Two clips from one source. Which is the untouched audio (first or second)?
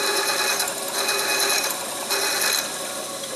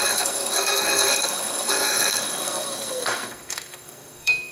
first